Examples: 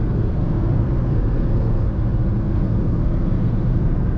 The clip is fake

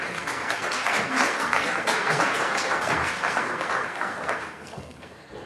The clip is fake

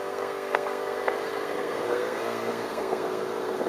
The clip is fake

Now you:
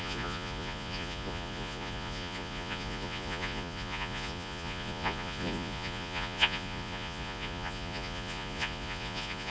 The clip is fake